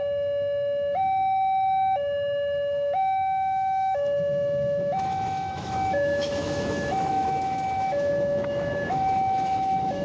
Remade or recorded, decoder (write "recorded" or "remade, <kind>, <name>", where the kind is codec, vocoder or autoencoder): remade, autoencoder, DAC-VAE